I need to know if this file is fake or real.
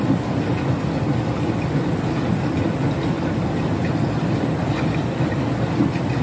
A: real